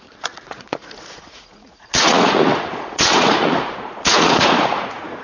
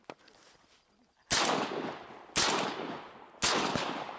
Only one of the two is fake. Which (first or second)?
first